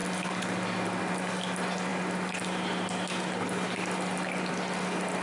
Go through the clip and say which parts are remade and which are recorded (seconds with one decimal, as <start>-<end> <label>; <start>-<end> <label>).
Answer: 0.0-5.2 recorded